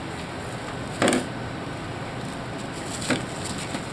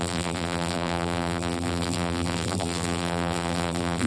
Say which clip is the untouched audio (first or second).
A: first